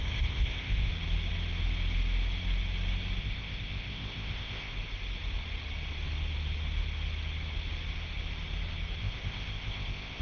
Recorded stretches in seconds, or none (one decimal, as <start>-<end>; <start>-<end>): 0.9-3.2; 4.7-9.0